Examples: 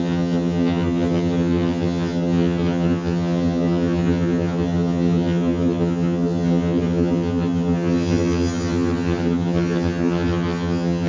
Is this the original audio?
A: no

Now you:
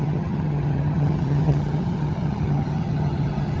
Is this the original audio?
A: no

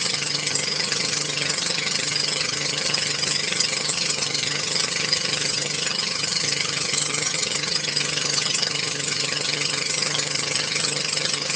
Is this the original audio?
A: no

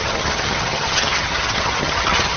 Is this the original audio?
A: no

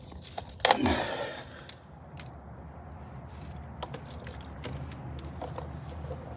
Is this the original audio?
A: yes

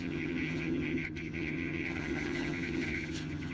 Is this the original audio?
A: no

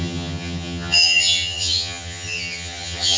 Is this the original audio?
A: no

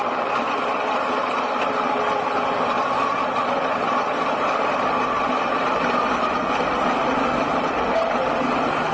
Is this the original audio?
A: yes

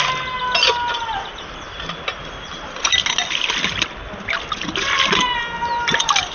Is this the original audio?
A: yes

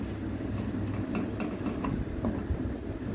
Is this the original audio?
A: yes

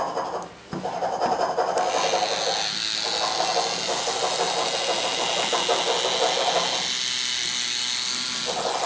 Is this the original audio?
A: yes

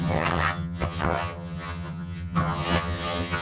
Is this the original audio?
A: no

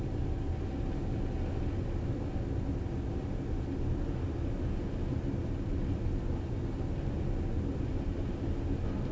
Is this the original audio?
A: yes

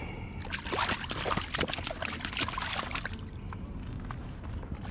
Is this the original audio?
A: yes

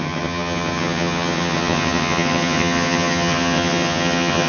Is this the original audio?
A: no